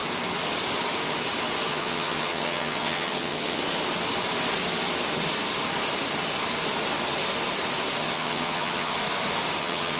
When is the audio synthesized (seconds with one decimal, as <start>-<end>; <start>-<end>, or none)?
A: 1.7-3.6; 8.0-9.0; 9.6-10.0